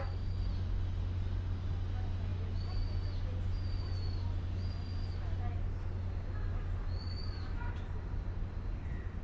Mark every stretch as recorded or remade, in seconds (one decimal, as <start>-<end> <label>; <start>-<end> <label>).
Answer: 0.0-7.2 recorded; 7.2-7.7 remade; 7.7-9.2 recorded